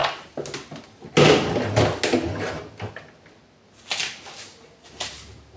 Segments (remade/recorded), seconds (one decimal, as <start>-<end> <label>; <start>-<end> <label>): 0.0-5.6 recorded